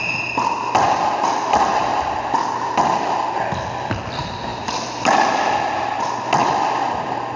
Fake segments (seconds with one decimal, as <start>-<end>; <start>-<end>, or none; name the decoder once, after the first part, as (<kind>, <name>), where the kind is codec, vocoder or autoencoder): none